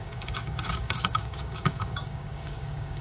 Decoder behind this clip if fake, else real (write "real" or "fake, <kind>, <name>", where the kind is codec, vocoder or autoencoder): fake, codec, DAC